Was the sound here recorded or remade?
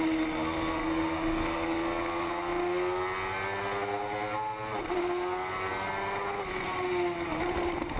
recorded